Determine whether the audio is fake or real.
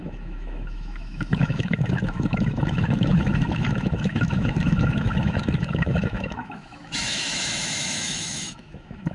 fake